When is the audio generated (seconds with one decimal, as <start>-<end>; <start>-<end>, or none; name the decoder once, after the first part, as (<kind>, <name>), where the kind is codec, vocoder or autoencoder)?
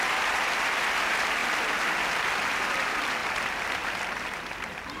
0.0-1.4 (vocoder, BigVGAN v2); 2.6-5.0